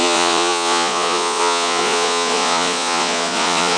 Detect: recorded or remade remade